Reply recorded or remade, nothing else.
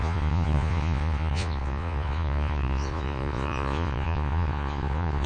remade